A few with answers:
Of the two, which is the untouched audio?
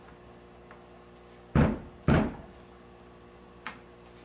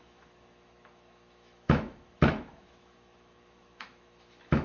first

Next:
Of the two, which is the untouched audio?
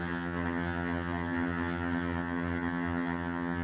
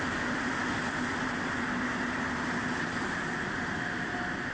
second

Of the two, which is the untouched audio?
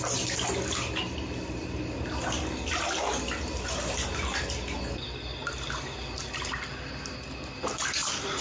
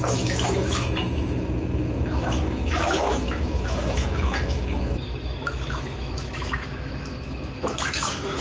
first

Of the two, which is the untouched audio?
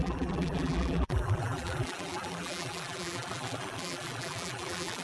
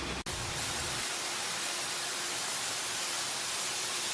second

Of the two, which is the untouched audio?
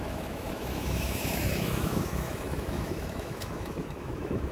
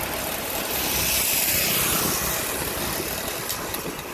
second